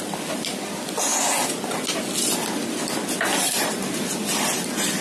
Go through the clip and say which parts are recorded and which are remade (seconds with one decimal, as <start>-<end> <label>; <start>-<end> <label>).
0.0-3.3 recorded; 3.3-4.1 remade; 4.1-5.0 recorded